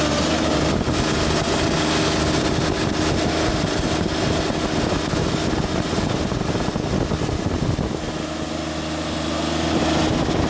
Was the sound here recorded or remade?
recorded